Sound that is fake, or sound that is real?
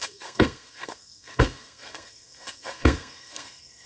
fake